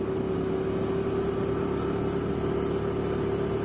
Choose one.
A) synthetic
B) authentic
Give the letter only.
B